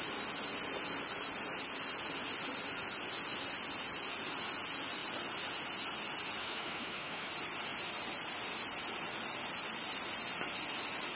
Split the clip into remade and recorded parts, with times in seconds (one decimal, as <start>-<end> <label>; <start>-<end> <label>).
0.0-6.4 recorded; 6.4-7.3 remade; 7.3-11.2 recorded